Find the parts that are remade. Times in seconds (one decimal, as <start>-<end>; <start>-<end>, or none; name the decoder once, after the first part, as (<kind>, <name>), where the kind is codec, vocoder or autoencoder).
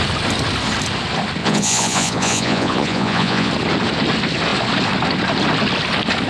1.4-3.5 (vocoder, Vocos)